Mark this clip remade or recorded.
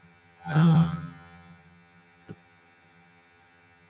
remade